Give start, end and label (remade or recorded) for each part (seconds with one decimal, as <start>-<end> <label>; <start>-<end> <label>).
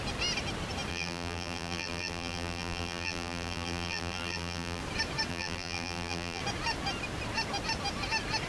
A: 0.0-0.9 recorded; 0.9-4.8 remade; 4.8-5.3 recorded; 5.3-6.4 remade; 6.4-8.5 recorded